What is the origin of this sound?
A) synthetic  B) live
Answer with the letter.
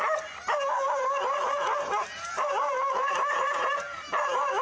B